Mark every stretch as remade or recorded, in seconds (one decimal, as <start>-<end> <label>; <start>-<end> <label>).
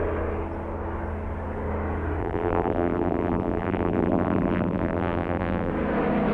0.0-2.2 recorded; 2.2-5.7 remade; 5.7-6.3 recorded